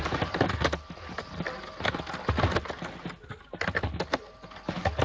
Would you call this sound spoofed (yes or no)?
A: no